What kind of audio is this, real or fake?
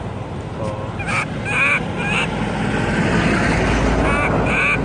real